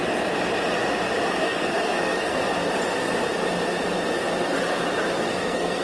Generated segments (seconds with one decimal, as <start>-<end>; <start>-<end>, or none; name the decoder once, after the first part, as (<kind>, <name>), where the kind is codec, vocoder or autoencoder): 1.4-2.4 (codec, SNAC); 5.3-5.8

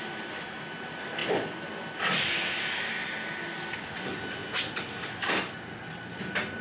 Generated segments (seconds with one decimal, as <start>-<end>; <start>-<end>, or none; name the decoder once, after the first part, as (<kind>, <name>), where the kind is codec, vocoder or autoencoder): none

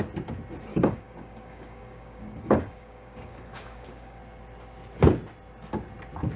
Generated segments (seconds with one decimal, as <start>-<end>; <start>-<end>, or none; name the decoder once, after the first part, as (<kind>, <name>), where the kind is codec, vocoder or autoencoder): 0.7-4.2 (codec, DAC)

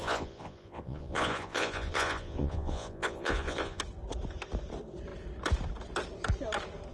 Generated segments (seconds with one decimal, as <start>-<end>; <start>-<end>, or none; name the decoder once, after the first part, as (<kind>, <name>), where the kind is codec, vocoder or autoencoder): 0.0-3.8 (vocoder, Vocos)

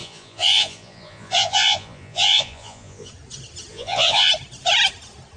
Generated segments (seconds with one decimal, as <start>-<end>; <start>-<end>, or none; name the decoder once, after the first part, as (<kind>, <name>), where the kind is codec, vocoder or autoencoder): 0.0-3.1 (vocoder, Vocos); 3.7-4.3

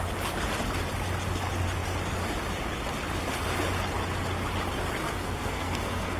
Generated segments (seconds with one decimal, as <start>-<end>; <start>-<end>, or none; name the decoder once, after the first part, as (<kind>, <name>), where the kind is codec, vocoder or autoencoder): 5.0-6.2 (codec, SNAC)

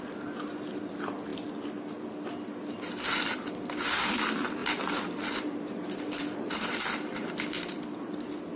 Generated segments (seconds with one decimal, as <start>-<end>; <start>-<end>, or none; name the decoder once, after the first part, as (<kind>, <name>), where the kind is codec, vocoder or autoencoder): 1.3-3.5 (vocoder, BigVGAN v2); 4.6-6.8